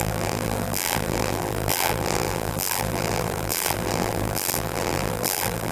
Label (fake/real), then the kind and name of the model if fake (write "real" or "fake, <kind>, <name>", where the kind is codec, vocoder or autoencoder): fake, vocoder, BigVGAN v2